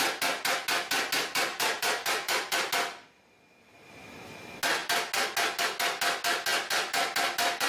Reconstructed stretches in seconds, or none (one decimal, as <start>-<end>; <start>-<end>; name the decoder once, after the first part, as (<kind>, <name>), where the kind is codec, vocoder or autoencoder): 1.5-2.7 (vocoder, BigVGAN v2)